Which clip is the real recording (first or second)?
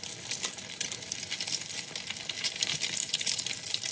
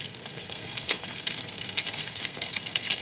first